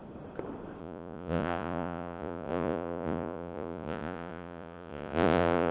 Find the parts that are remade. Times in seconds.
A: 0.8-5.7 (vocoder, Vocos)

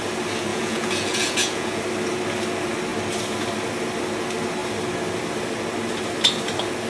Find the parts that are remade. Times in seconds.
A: 0.5-1.8 (vocoder, Vocos)